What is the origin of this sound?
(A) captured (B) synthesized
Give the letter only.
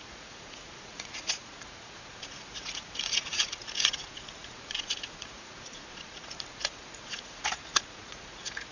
B